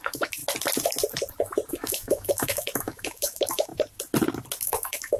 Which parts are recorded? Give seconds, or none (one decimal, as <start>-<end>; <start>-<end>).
0.4-1.7; 3.7-4.6